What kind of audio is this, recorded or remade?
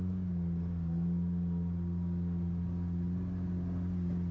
recorded